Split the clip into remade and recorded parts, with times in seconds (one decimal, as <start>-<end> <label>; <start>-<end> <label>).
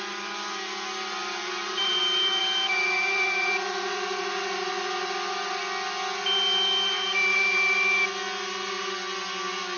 0.0-1.2 recorded; 1.2-5.6 remade; 5.6-7.3 recorded; 7.3-8.1 remade; 8.1-9.8 recorded